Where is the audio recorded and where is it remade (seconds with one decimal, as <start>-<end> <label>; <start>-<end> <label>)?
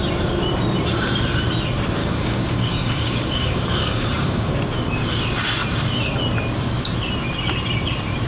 0.0-2.0 recorded; 2.0-4.5 remade; 4.5-8.3 recorded